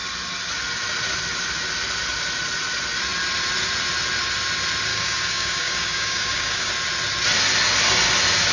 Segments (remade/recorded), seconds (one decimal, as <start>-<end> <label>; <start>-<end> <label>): 0.0-4.9 recorded; 4.9-6.7 remade; 6.7-8.5 recorded